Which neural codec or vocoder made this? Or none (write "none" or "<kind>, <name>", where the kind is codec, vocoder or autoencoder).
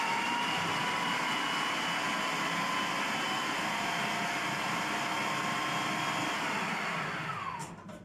none